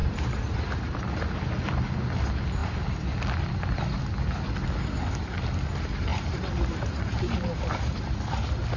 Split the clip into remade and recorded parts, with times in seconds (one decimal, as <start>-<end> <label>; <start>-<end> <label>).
0.0-1.4 remade; 1.4-6.1 recorded; 6.1-8.1 remade; 8.1-8.8 recorded